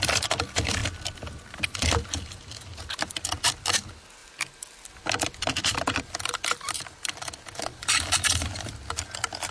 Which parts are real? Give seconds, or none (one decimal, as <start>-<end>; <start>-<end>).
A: 0.0-7.7; 8.7-9.5